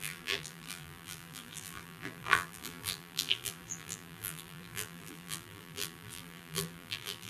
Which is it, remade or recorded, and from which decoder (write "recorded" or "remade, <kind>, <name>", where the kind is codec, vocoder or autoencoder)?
remade, vocoder, BigVGAN v2